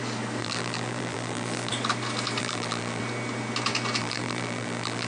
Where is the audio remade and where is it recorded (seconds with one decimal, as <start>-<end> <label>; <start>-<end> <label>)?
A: 0.0-0.4 recorded; 0.4-1.7 remade; 1.7-2.4 recorded; 2.4-3.0 remade; 3.0-4.0 recorded; 4.0-5.1 remade